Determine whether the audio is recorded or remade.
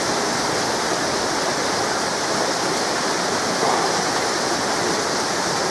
recorded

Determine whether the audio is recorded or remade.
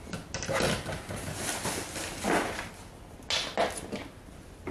recorded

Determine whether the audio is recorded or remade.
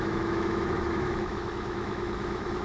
remade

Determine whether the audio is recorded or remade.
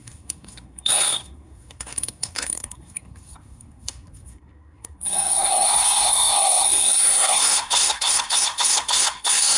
remade